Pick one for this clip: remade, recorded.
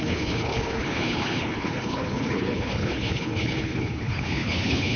remade